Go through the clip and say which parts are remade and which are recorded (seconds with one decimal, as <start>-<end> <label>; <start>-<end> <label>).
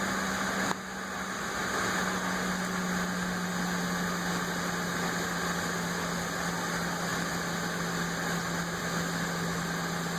0.0-10.2 recorded